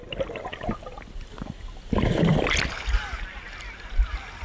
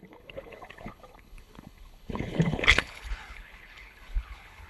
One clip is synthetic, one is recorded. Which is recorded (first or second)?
first